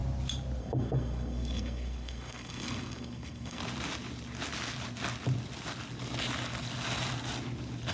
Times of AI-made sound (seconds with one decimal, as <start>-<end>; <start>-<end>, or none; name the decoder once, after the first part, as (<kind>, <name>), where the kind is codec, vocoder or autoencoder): 0.6-3.6 (codec, SNAC)